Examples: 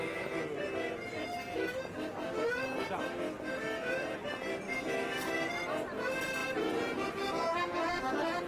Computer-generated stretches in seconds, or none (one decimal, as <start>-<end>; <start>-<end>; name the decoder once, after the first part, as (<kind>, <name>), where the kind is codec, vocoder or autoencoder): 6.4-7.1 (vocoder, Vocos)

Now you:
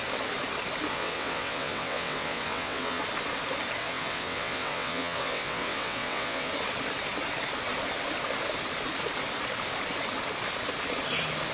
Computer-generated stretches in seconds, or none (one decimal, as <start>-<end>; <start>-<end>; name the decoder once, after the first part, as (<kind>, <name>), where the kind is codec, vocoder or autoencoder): 0.9-3.0 (vocoder, WaveNeXt); 3.8-6.5

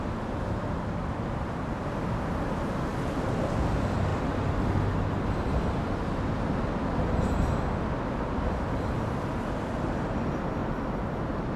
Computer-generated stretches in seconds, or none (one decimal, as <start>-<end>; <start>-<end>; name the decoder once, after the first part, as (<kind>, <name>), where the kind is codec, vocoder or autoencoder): none

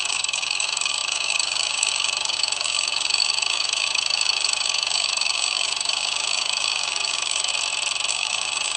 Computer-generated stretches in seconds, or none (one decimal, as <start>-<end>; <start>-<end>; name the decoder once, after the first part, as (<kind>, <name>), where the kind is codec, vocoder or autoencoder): 0.0-7.5 (codec, DAC); 8.1-8.8

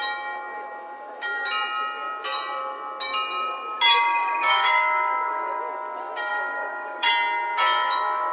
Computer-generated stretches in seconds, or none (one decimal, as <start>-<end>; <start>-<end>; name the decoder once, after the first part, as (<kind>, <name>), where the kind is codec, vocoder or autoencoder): 3.9-5.6 (codec, DAC); 6.3-7.1

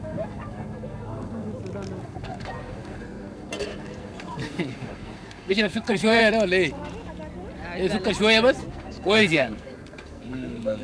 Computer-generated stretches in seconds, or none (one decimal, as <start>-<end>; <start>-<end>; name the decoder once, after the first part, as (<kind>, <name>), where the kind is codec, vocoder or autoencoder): 0.0-1.5 (codec, SNAC); 2.0-6.2; 8.7-10.8